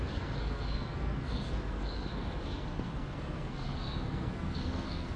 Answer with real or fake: fake